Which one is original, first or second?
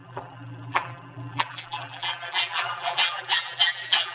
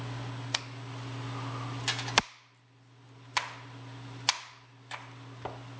second